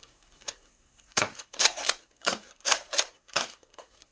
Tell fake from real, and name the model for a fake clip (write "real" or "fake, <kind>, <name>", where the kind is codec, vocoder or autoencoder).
fake, codec, SNAC